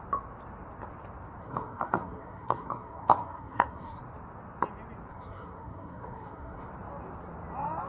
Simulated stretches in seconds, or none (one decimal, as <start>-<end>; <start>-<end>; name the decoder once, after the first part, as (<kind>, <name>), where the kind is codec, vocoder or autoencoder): 1.4-4.0 (codec, SNAC); 5.1-6.7